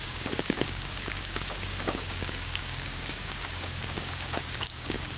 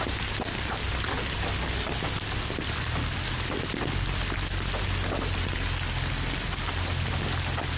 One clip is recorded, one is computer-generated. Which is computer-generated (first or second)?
first